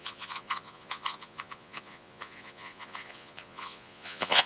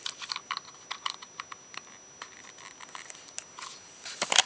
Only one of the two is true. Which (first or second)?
second